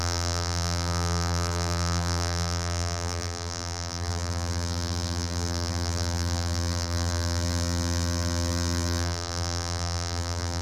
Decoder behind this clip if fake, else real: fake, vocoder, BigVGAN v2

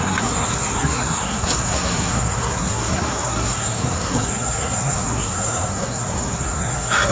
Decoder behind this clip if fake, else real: fake, codec, SNAC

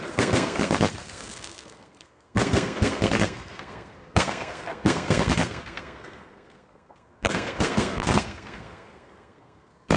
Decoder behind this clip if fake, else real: fake, codec, SNAC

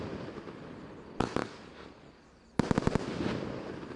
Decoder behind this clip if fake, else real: real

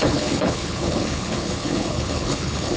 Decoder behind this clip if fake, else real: fake, codec, HILCodec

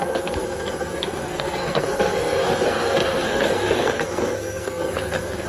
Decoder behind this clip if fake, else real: fake, codec, SNAC